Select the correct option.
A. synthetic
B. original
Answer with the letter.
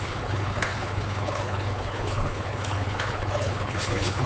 A